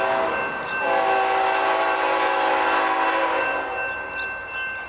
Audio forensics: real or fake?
real